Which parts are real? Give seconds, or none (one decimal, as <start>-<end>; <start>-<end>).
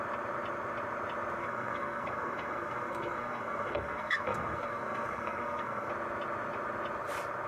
0.0-1.4; 5.9-7.5